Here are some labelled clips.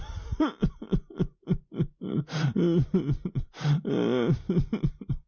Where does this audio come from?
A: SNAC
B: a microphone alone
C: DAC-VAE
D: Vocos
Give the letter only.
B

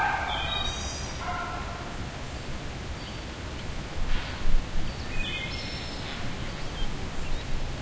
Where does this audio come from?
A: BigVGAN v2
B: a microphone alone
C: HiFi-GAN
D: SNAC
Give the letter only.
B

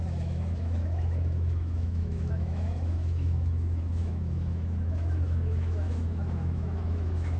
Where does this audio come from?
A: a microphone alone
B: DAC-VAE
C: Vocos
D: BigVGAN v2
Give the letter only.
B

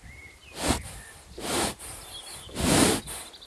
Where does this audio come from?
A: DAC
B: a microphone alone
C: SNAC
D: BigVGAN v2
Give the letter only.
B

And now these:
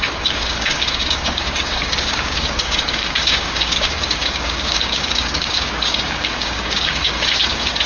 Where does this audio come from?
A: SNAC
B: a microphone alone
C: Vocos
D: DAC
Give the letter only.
D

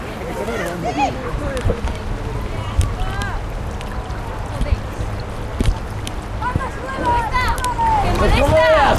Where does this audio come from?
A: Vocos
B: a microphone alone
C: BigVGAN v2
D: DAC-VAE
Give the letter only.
B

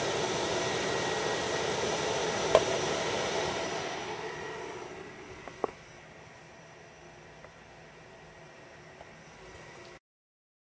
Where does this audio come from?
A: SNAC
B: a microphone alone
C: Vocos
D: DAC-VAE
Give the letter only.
B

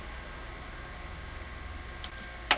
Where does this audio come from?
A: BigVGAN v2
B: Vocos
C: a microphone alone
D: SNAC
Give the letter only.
C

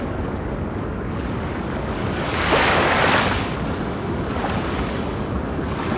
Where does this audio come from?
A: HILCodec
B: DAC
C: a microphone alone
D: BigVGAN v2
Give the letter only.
B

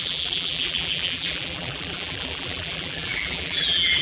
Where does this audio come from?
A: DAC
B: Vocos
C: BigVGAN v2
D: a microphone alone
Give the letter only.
C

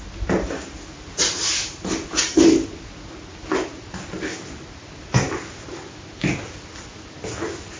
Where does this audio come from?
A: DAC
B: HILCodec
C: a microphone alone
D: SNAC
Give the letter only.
C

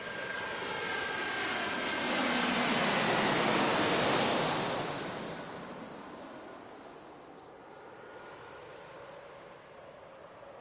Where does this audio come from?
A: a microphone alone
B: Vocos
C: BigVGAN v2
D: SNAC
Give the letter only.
A